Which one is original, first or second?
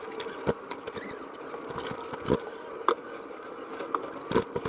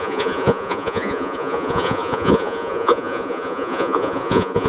first